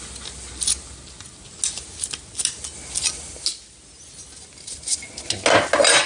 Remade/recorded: recorded